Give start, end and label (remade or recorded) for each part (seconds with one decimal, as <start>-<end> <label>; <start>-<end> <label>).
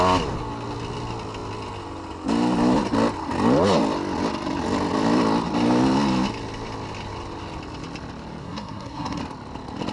0.0-8.4 recorded; 8.4-9.2 remade; 9.2-9.9 recorded